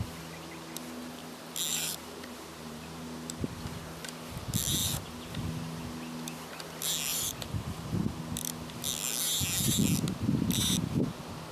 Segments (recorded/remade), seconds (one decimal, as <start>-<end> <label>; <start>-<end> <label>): 0.0-1.7 recorded; 1.7-3.5 remade; 3.5-4.8 recorded; 4.8-5.4 remade; 5.4-7.1 recorded; 7.1-8.0 remade; 8.0-11.5 recorded

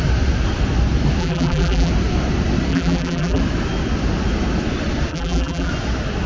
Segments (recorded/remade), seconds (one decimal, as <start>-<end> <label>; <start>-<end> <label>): 0.0-1.2 recorded; 1.2-1.9 remade; 1.9-2.7 recorded; 2.7-3.4 remade; 3.4-5.1 recorded; 5.1-5.7 remade; 5.7-6.3 recorded

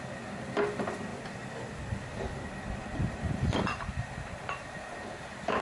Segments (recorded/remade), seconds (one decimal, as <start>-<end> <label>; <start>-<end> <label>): 0.0-2.8 recorded; 2.8-5.0 remade; 5.0-5.6 recorded

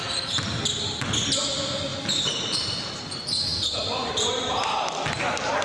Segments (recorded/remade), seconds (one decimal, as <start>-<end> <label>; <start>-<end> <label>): 0.0-1.9 recorded; 1.9-2.8 remade; 2.8-5.6 recorded

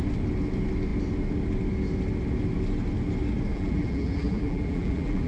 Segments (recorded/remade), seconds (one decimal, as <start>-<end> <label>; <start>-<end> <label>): 0.0-3.5 recorded; 3.5-5.3 remade

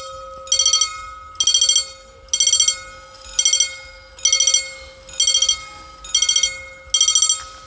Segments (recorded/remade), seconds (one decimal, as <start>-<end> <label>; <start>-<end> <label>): 0.0-7.7 recorded

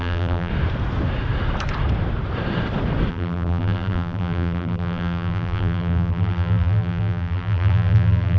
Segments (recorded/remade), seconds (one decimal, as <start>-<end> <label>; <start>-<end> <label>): 0.0-0.5 remade; 0.5-3.1 recorded; 3.1-8.4 remade